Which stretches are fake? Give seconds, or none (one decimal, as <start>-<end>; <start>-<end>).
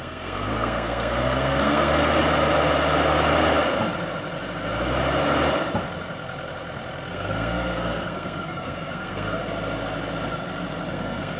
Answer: 0.0-1.9; 7.1-9.4; 10.9-11.4